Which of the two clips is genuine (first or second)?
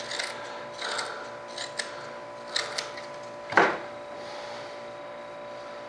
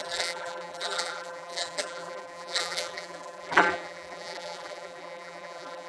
first